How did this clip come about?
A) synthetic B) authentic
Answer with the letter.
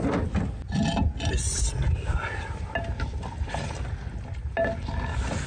B